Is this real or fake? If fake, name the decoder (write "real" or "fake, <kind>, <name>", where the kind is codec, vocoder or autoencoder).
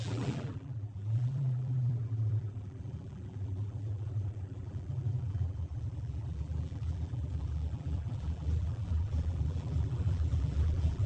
fake, vocoder, BigVGAN v2